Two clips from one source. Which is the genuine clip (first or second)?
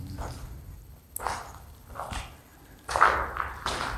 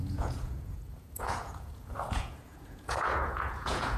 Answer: first